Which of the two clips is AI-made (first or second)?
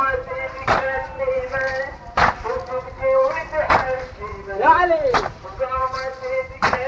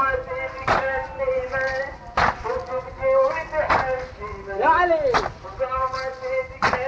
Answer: first